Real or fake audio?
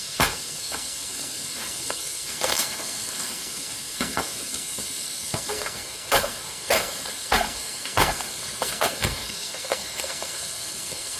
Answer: fake